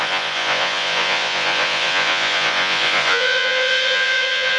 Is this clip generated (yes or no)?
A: yes